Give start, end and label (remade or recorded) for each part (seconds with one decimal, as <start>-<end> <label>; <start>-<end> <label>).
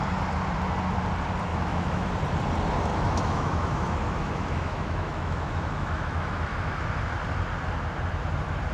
0.0-1.5 recorded; 1.5-2.1 remade; 2.1-2.9 recorded; 2.9-6.9 remade; 6.9-8.7 recorded